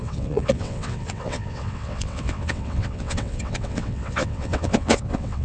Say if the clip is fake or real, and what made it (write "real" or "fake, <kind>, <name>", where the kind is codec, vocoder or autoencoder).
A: fake, vocoder, WaveNeXt